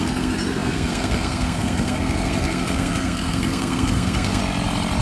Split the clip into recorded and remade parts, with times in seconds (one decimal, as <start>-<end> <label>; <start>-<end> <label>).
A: 0.0-4.4 remade; 4.4-5.0 recorded